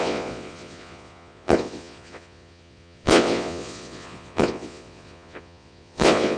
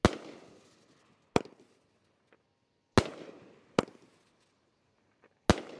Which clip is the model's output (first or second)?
first